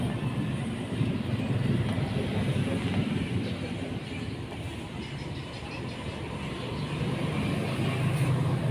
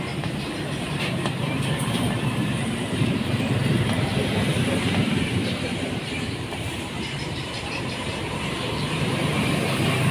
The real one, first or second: first